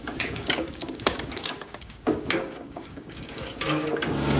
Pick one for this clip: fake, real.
fake